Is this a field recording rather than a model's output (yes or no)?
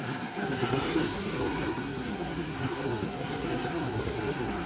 no